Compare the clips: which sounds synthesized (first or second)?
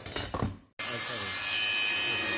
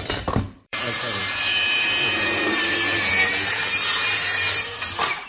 second